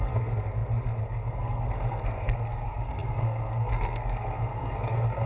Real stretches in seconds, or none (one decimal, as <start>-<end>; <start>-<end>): none